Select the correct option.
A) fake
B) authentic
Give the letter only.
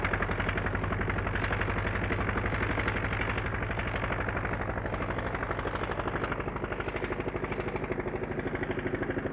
B